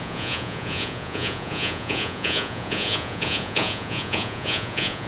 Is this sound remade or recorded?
remade